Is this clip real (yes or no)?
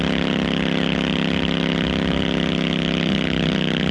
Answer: yes